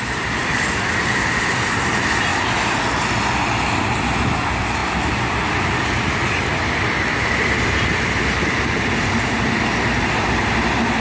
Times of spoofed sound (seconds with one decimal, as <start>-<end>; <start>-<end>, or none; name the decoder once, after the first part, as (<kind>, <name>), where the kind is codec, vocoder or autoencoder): none